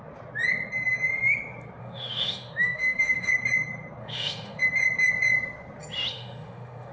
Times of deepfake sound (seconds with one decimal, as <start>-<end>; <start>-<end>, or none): 1.8-3.3; 4.0-4.6; 6.1-6.9